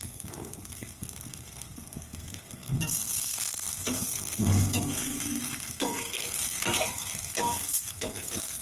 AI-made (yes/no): yes